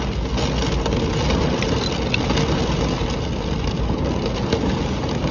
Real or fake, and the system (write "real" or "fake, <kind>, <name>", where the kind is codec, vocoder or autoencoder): real